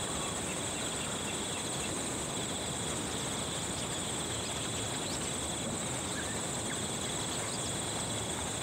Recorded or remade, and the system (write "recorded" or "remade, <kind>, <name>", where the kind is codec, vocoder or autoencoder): recorded